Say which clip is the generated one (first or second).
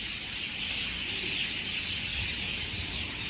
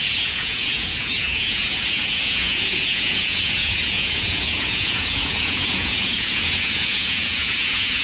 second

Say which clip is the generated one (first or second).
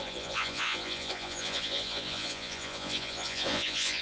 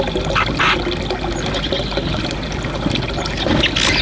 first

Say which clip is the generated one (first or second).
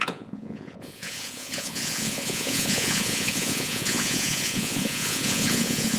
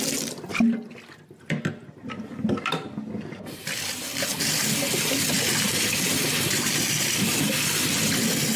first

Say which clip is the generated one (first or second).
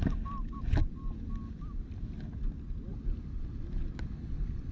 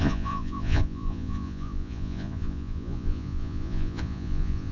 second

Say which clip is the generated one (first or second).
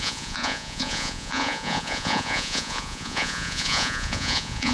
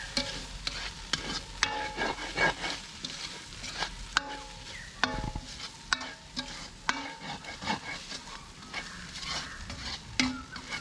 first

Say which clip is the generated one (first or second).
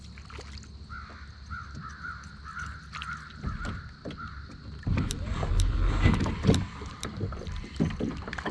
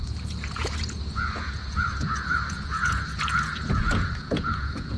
second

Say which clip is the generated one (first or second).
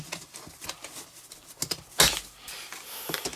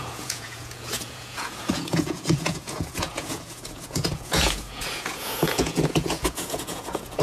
second